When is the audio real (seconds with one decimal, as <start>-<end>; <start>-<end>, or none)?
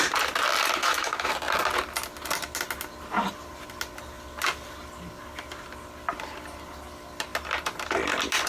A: 0.0-0.8; 1.3-8.5